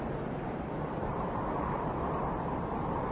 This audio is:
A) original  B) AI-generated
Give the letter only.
B